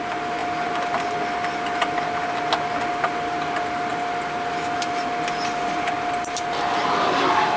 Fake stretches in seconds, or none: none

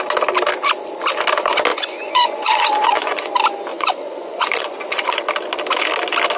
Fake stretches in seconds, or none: 1.7-3.3; 3.7-5.2

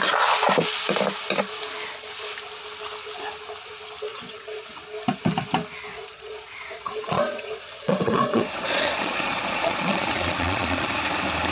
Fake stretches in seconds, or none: 4.1-4.8; 5.9-10.9

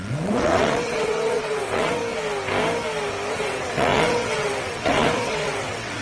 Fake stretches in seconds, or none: 0.0-2.0; 3.3-6.0

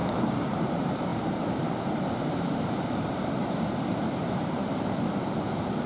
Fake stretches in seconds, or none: 0.0-4.6; 5.5-5.9